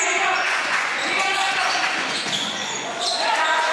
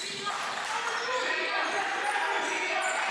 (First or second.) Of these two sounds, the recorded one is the second